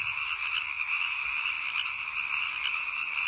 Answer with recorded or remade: recorded